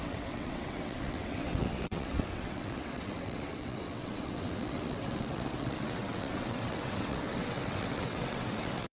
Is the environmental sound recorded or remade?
remade